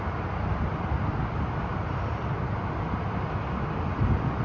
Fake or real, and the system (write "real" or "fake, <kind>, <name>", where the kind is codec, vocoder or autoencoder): real